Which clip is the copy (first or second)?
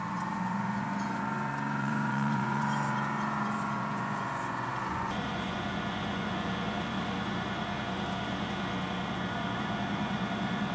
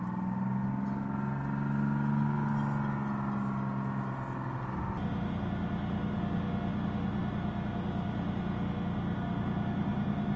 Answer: first